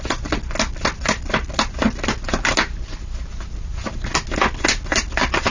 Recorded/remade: recorded